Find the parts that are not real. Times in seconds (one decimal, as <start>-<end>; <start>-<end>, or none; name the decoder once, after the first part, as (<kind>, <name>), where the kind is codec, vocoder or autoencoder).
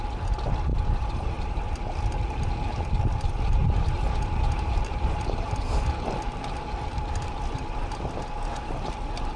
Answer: 0.7-1.5 (vocoder, BigVGAN v2); 3.6-5.5